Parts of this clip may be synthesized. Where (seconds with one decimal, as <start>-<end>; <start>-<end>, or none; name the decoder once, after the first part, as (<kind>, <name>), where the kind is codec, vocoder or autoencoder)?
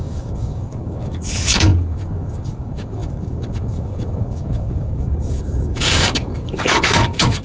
0.0-7.4 (codec, DAC)